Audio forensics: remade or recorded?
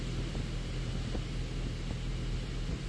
recorded